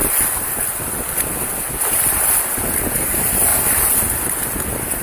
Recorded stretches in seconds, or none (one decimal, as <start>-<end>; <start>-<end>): 0.0-5.0